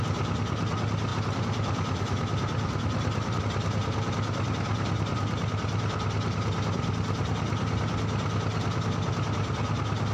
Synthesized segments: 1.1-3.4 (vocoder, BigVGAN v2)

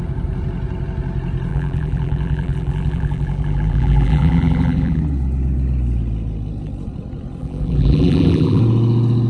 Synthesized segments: 1.5-5.0 (vocoder, BigVGAN v2); 7.4-8.6

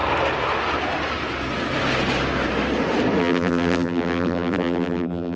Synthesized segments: 3.2-5.4 (vocoder, BigVGAN v2)

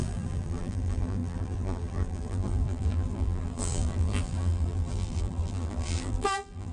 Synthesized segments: 0.0-6.7 (vocoder, BigVGAN v2)

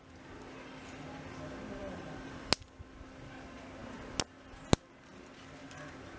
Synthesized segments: 1.8-2.5 (vocoder, BigVGAN v2)

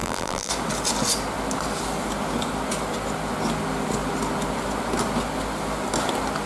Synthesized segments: 0.0-0.5 (vocoder, BigVGAN v2)

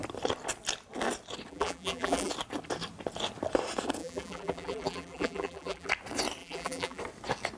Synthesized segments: 1.5-2.3 (vocoder, BigVGAN v2); 4.0-5.9; 6.4-7.0